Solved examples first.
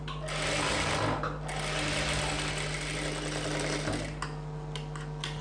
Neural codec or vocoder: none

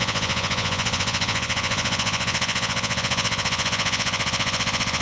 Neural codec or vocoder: vocoder, Vocos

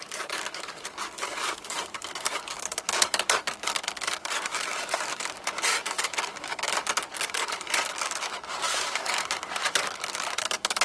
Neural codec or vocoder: codec, DAC